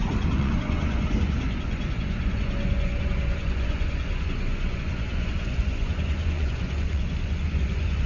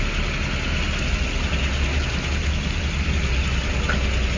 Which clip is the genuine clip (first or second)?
second